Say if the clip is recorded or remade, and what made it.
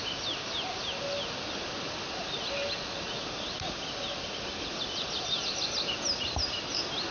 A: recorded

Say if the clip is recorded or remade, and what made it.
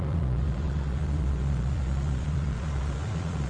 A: remade, vocoder, Vocos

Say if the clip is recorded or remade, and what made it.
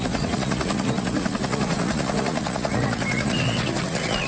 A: remade, vocoder, Vocos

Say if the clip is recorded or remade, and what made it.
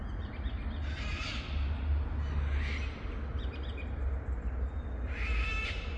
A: recorded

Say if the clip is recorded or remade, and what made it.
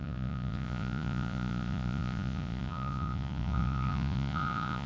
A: remade, vocoder, Vocos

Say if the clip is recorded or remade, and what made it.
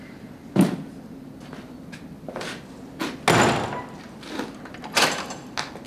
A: recorded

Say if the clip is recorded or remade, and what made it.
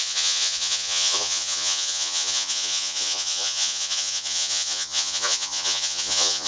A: remade, vocoder, Vocos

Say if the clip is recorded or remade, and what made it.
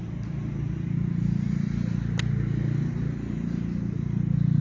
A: recorded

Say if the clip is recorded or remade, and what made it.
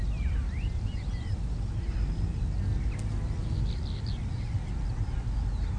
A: recorded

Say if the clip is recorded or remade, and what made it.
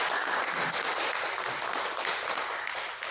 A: remade, vocoder, BigVGAN v2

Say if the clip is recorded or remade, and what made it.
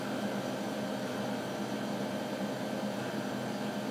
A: recorded